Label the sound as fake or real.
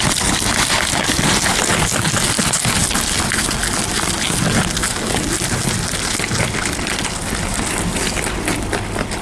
real